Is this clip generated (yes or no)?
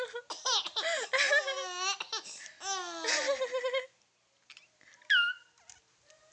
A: no